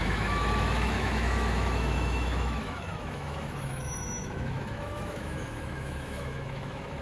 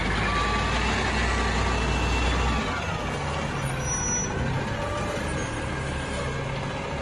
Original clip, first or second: second